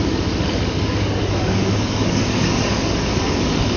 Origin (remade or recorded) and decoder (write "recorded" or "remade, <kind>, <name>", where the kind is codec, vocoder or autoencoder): remade, codec, DAC